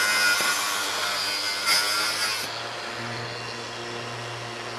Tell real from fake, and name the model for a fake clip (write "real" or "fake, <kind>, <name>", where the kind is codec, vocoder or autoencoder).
real